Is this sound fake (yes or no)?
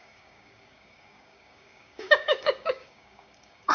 yes